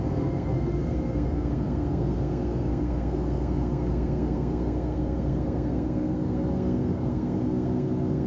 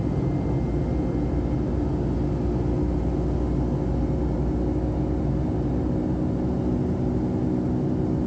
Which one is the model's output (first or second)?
first